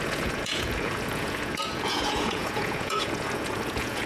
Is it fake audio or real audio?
fake